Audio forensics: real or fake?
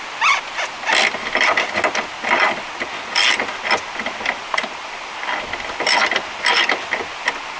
real